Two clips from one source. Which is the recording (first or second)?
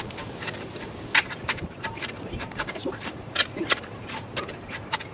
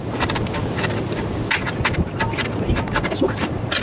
second